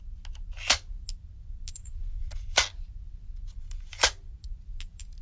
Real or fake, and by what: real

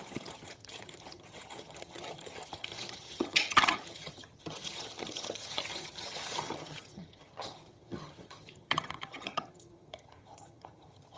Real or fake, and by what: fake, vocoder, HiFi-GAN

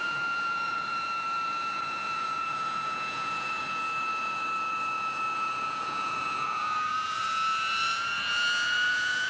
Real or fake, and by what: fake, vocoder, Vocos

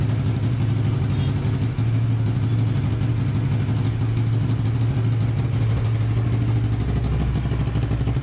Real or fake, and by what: real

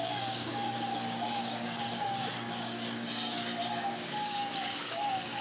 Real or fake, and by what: fake, codec, DAC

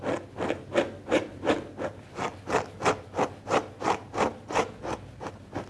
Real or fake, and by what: real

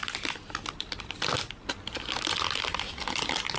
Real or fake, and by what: real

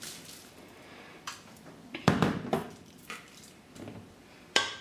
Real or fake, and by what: fake, vocoder, BigVGAN v2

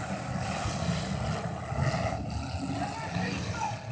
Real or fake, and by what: real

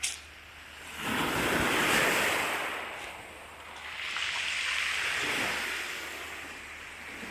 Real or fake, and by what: real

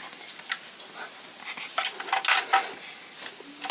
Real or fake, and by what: real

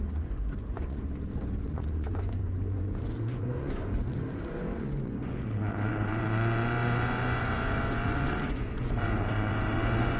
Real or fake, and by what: fake, vocoder, Vocos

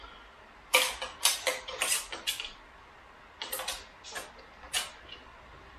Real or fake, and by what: real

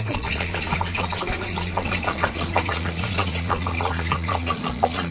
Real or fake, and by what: fake, vocoder, Vocos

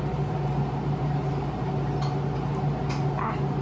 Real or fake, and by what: real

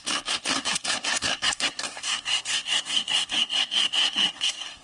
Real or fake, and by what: fake, codec, SNAC